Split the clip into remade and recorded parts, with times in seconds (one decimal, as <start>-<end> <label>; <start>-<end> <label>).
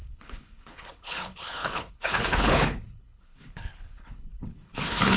0.0-5.2 remade